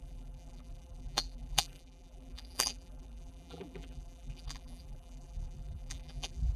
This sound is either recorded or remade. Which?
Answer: remade